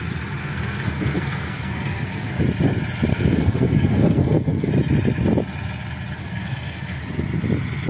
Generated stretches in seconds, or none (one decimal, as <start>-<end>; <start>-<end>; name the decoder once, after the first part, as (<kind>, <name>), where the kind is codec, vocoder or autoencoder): 0.4-2.4 (codec, SNAC); 3.1-4.7; 6.2-7.0